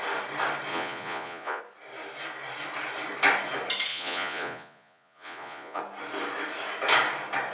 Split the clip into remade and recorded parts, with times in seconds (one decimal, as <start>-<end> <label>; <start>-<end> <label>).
0.0-0.7 recorded; 0.7-1.6 remade; 1.6-3.9 recorded; 3.9-5.8 remade; 5.8-7.5 recorded